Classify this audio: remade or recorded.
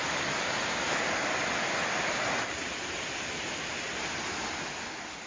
recorded